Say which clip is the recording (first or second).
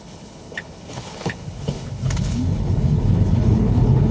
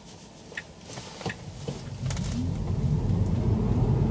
second